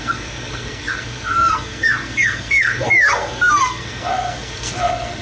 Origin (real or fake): fake